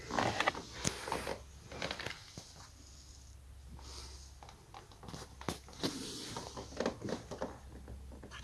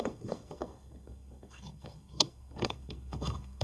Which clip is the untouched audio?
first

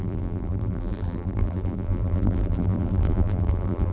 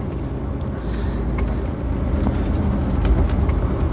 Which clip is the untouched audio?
second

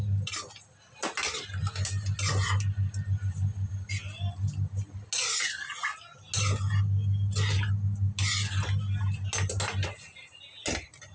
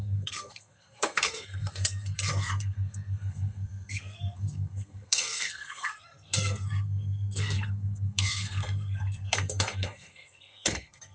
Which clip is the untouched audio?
first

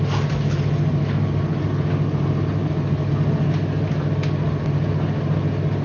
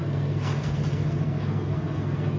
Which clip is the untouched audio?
first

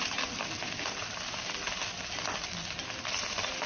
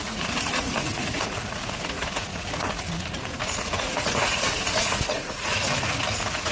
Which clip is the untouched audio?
first